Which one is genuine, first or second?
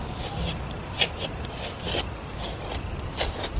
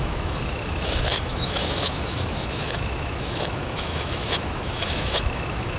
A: first